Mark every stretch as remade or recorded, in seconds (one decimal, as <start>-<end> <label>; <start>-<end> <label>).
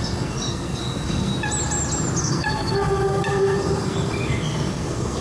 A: 0.0-1.3 remade; 1.3-2.2 recorded; 2.2-5.2 remade